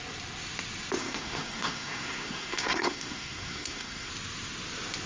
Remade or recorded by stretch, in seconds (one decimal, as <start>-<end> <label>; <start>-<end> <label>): 0.0-1.0 recorded; 1.0-4.1 remade; 4.1-5.1 recorded